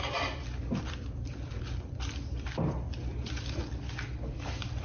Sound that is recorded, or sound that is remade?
remade